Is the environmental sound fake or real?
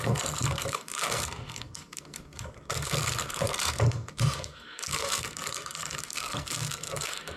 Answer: fake